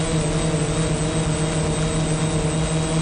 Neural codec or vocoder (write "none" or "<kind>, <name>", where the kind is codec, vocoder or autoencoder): none